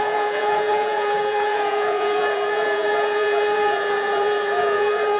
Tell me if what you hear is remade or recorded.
remade